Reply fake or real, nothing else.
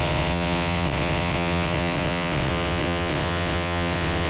fake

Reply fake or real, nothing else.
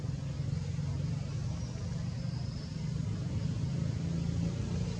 real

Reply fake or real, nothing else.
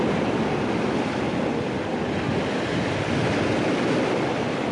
real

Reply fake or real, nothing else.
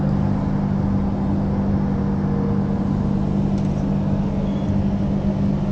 real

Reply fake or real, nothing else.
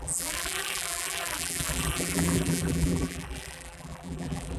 fake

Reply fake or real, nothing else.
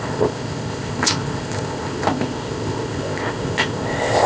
fake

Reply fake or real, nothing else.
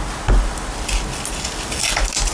real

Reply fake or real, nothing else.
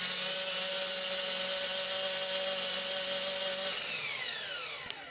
real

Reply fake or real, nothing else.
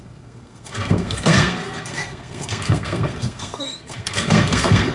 fake